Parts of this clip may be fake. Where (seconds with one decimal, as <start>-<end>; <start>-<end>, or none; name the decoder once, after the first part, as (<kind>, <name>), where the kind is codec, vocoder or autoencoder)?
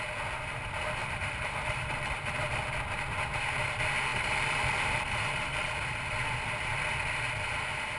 1.0-2.5 (vocoder, BigVGAN v2); 4.1-5.8